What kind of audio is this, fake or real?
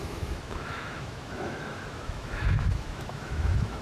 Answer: fake